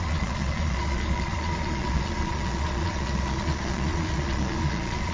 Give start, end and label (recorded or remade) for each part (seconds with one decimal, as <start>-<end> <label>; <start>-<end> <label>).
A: 0.0-5.1 remade

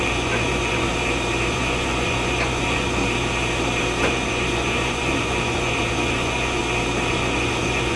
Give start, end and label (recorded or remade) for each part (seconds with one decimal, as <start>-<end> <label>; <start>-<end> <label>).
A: 0.0-0.9 remade; 0.9-1.5 recorded; 1.5-3.0 remade; 3.0-4.0 recorded; 4.0-6.6 remade; 6.6-7.1 recorded; 7.1-8.0 remade